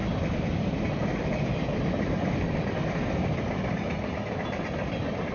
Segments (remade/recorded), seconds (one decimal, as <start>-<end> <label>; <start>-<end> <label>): 0.0-3.2 remade; 3.2-5.3 recorded